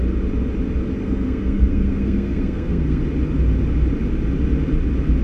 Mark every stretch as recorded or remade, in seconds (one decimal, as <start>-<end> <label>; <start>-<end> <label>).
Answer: 0.0-1.0 recorded; 1.0-3.0 remade; 3.0-5.2 recorded